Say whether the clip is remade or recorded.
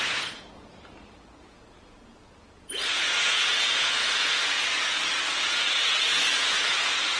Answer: remade